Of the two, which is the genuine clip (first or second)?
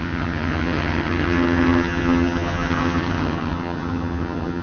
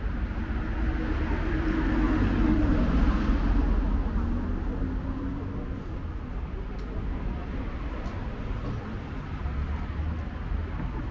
second